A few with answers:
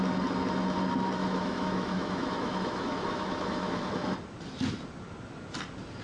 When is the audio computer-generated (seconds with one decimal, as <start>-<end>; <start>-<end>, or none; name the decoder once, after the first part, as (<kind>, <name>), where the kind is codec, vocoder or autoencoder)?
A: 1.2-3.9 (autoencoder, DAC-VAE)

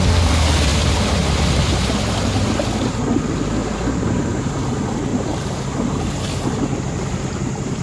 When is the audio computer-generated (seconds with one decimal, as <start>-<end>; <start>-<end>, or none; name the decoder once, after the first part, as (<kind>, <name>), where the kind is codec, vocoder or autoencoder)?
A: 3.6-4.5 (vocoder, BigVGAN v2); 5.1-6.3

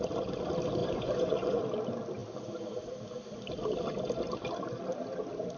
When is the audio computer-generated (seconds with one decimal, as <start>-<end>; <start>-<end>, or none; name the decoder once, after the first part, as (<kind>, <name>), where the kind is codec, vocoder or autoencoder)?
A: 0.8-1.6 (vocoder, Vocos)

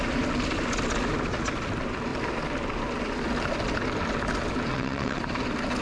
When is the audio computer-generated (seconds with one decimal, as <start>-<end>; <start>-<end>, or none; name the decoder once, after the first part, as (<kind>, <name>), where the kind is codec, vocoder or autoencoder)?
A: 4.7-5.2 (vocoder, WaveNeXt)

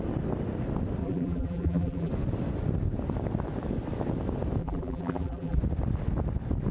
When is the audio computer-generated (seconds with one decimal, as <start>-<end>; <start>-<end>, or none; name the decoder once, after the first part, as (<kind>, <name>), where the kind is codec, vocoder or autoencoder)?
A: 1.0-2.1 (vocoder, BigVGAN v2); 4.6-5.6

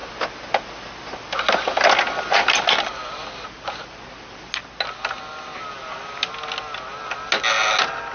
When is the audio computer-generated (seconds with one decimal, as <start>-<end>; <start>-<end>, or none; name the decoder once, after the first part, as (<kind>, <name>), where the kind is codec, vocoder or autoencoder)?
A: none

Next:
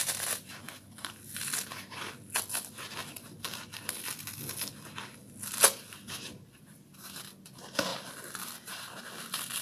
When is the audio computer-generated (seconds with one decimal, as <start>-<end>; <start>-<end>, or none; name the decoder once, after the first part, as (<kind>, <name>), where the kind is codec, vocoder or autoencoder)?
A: none